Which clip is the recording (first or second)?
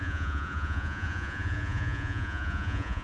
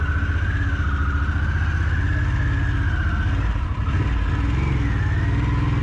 second